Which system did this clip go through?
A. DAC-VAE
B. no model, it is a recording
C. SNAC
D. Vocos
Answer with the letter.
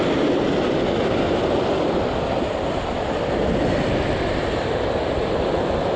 B